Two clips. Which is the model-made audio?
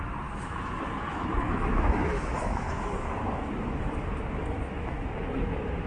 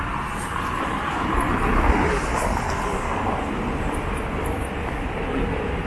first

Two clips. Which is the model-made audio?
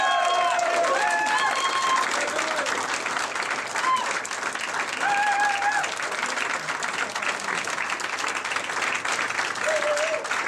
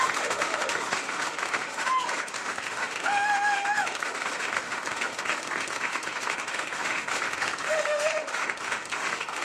second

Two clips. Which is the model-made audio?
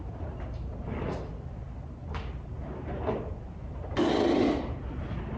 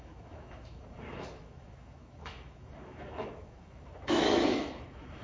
second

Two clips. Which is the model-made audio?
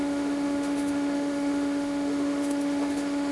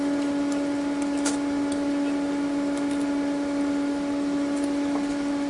first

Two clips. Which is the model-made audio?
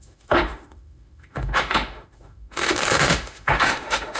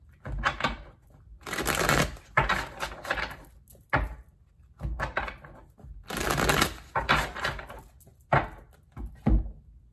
first